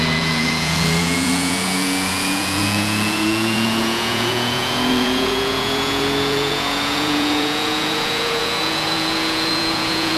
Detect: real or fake fake